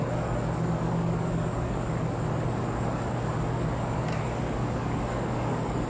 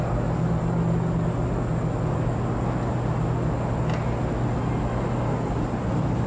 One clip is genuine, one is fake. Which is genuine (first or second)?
second